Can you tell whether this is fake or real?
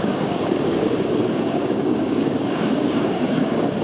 fake